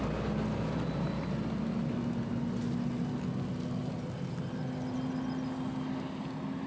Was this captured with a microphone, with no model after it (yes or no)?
yes